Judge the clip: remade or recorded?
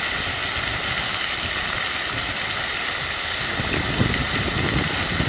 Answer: recorded